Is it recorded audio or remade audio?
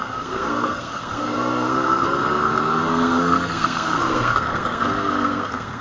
remade